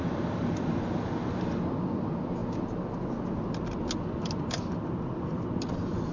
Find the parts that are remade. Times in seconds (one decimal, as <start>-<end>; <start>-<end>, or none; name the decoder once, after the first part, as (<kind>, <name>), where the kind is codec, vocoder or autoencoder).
none